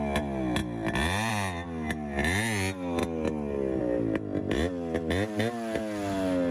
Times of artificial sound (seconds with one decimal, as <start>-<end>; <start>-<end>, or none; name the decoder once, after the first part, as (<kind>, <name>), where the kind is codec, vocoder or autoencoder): none